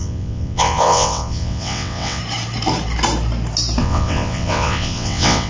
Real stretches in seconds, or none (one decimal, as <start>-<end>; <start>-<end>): 2.2-3.8